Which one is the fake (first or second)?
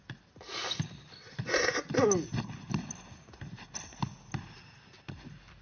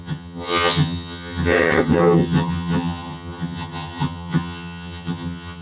second